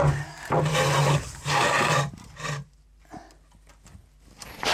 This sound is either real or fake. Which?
real